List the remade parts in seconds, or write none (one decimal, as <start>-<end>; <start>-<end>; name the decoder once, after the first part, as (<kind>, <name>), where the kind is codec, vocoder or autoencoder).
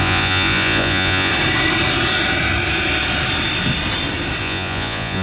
0.0-1.3 (vocoder, Vocos); 4.4-5.2